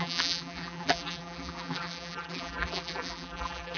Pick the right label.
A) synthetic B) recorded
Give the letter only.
A